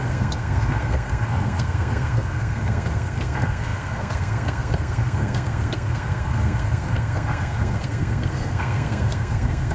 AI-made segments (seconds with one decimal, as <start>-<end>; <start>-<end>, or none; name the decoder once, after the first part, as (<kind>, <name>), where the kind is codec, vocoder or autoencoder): 0.0-9.7 (codec, SNAC)